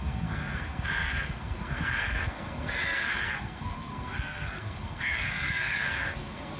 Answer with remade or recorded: remade